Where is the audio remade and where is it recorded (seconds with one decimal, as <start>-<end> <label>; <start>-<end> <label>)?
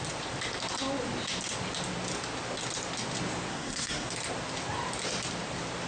0.0-3.5 recorded; 3.5-4.1 remade; 4.1-5.9 recorded